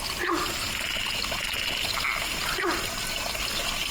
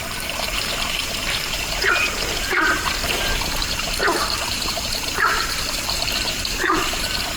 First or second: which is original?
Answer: first